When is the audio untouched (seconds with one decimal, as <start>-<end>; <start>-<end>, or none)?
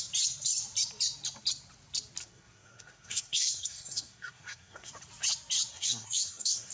0.0-2.2; 4.9-5.7